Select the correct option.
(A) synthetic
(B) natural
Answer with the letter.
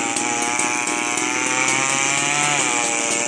B